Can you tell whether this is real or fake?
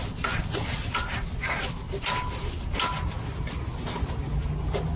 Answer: real